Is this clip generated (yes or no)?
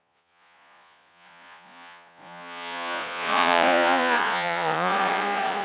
yes